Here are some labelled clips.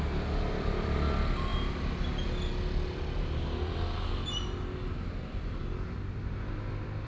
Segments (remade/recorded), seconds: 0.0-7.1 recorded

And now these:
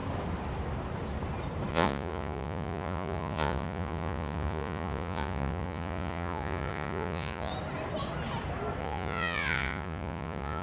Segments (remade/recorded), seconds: 0.0-1.7 recorded; 1.7-7.5 remade; 7.5-8.8 recorded; 8.8-10.6 remade